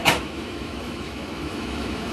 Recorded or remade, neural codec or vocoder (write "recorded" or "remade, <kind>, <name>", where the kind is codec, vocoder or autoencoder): remade, autoencoder, DAC-VAE